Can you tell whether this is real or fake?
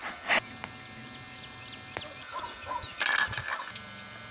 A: real